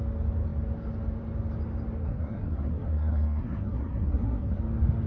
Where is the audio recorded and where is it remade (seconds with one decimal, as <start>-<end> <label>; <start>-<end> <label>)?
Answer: 0.0-2.0 recorded; 2.0-4.6 remade; 4.6-5.1 recorded